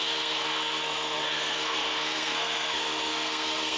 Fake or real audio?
fake